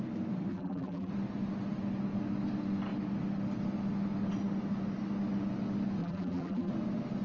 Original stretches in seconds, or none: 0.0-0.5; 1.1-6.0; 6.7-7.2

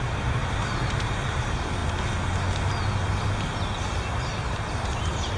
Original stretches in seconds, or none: 1.8-5.0